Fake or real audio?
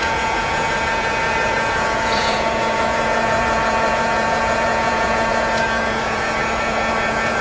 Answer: fake